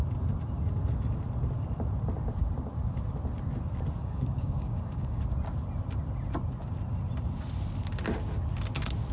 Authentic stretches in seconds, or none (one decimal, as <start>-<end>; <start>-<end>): 0.0-4.0; 5.2-9.1